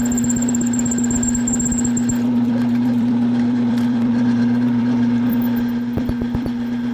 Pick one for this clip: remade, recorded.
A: remade